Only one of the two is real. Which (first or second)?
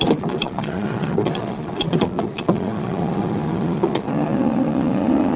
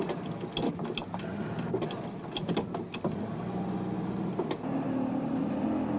second